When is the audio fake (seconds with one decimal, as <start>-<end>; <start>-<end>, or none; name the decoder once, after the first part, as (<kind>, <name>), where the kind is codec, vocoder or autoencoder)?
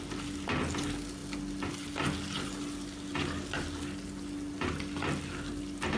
none